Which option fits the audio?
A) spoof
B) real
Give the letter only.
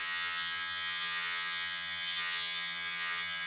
A